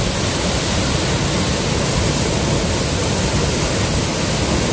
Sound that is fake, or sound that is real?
real